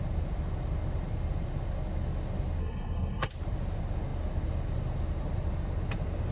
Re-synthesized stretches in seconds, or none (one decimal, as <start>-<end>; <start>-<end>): 2.6-3.3